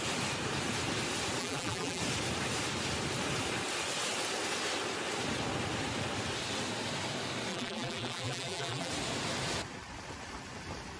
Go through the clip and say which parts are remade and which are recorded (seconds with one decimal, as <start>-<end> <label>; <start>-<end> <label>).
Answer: 0.0-1.4 recorded; 1.4-2.0 remade; 2.0-7.5 recorded; 7.5-8.9 remade; 8.9-11.0 recorded